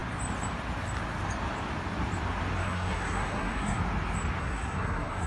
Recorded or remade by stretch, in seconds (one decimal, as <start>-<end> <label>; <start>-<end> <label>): 0.0-2.6 recorded; 2.6-3.8 remade; 3.8-4.4 recorded; 4.4-5.3 remade